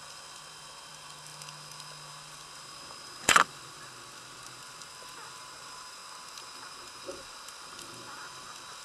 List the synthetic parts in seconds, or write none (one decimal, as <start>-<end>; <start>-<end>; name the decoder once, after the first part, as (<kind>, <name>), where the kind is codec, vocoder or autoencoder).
0.0-1.3 (vocoder, BigVGAN v2); 2.1-6.0; 7.3-8.8